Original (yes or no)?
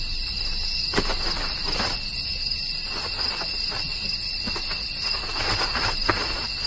yes